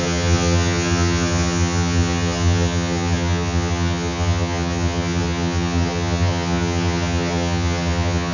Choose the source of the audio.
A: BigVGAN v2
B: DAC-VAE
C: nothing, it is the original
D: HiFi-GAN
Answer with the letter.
D